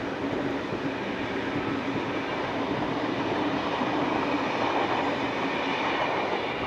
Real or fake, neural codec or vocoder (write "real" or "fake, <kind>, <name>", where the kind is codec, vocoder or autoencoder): real